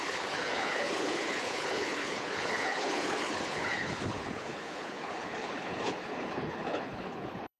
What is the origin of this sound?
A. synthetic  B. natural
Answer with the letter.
A